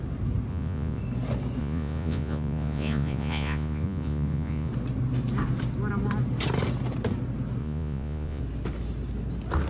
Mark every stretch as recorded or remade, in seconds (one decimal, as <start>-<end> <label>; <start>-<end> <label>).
0.0-0.5 recorded; 0.5-1.0 remade; 1.0-1.6 recorded; 1.6-4.7 remade; 4.7-7.6 recorded; 7.6-8.4 remade; 8.4-9.7 recorded